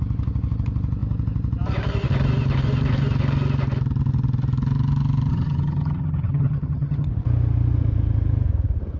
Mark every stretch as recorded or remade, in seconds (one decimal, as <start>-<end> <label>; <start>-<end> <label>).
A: 0.0-5.3 recorded; 5.3-7.1 remade; 7.1-9.0 recorded